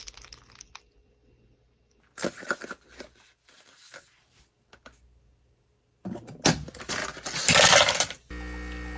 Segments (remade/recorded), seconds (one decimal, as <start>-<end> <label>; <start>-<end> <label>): 0.0-9.0 recorded